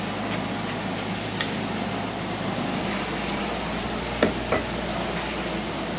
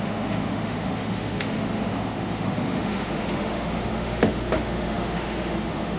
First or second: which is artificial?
second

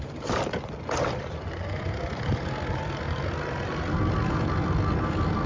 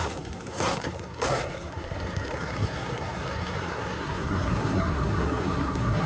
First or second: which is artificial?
second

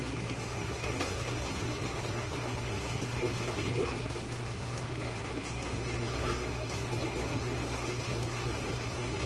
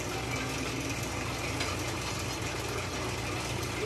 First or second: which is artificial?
first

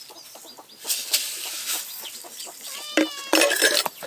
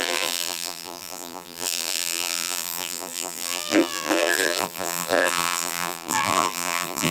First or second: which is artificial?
second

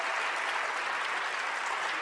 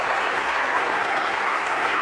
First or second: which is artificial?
second